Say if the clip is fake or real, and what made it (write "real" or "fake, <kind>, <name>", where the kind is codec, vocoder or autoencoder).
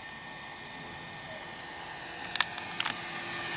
real